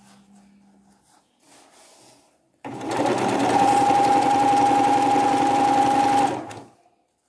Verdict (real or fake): real